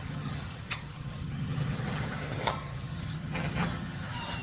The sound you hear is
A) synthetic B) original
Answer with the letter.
A